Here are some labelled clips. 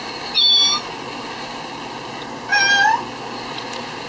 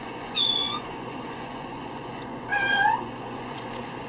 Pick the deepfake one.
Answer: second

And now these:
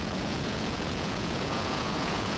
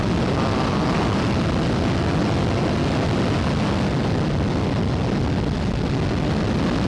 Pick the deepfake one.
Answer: first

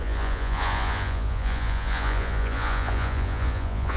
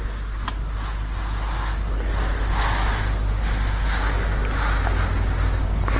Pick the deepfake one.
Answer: first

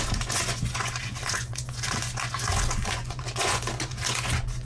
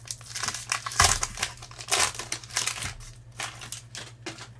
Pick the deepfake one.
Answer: first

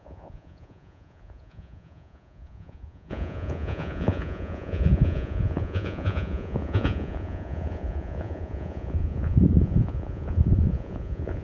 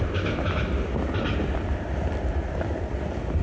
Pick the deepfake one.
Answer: first